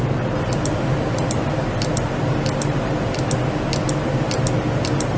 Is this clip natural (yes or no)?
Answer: yes